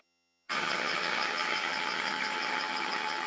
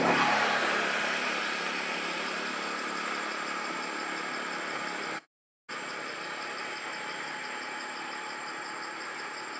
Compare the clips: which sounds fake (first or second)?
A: first